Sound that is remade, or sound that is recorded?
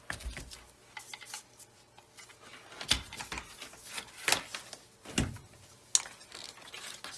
recorded